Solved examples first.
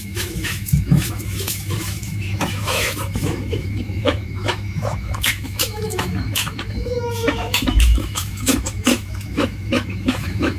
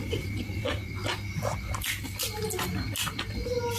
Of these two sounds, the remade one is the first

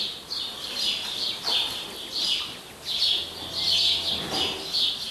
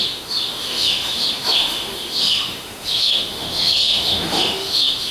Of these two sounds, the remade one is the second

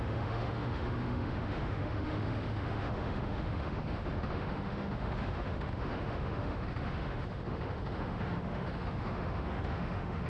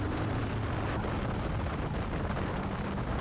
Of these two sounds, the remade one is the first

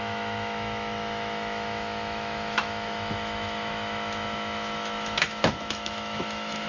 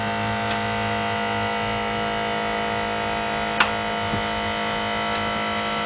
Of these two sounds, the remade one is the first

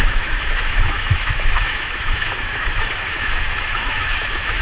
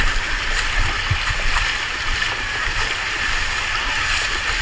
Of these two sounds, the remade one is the first